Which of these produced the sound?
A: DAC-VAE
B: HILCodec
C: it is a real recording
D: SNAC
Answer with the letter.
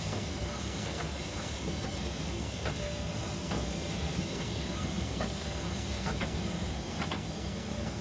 D